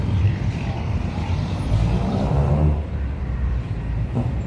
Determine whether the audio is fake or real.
fake